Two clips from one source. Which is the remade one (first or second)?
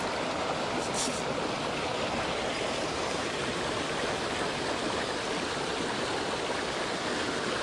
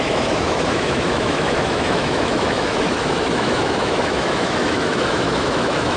second